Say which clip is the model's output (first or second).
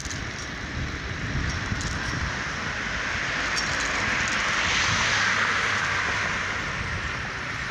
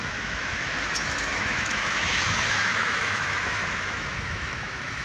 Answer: second